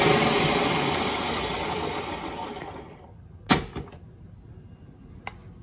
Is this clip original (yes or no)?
yes